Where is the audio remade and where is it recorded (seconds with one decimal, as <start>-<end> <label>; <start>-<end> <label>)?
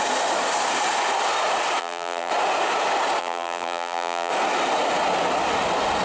0.0-1.8 recorded; 1.8-2.3 remade; 2.3-3.2 recorded; 3.2-4.3 remade; 4.3-6.0 recorded